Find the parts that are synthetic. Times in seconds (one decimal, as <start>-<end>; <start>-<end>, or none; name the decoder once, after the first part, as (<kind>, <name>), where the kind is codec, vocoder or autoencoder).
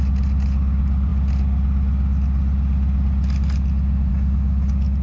none